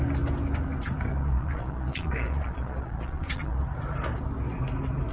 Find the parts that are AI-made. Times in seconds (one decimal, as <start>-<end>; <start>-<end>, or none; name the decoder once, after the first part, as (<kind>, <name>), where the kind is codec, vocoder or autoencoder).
1.1-3.6 (vocoder, Vocos)